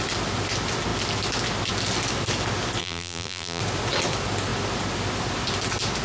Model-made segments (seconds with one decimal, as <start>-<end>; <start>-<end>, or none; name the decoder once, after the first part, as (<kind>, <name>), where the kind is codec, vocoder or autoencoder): 2.8-3.6 (vocoder, BigVGAN v2)